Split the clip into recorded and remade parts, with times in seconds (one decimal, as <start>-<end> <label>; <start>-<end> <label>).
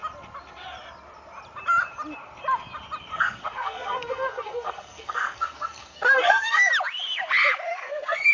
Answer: 0.0-3.1 recorded; 3.1-6.7 remade; 6.7-7.7 recorded; 7.7-8.3 remade